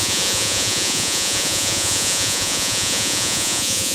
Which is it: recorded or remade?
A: remade